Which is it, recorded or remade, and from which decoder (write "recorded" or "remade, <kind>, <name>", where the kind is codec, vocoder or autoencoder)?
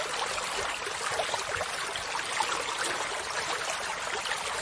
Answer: recorded